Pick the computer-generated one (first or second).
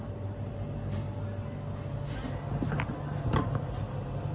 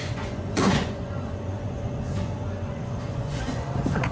second